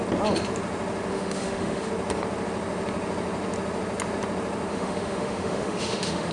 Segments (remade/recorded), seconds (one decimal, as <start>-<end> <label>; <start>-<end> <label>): 0.0-1.1 recorded; 1.1-1.9 remade; 1.9-4.7 recorded; 4.7-6.3 remade